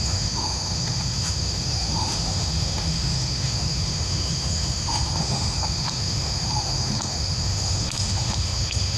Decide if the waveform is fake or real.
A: fake